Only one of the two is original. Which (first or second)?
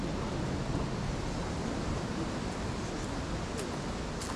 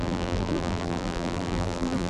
first